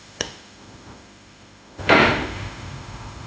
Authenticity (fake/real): fake